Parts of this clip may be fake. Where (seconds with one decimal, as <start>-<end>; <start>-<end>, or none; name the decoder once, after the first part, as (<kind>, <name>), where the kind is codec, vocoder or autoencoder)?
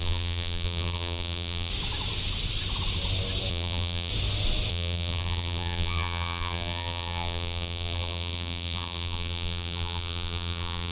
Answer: 0.0-1.7 (vocoder, BigVGAN v2); 3.5-4.1; 4.7-10.9